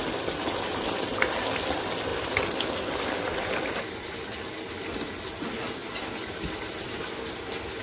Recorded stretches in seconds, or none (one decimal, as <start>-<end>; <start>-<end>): 0.0-7.8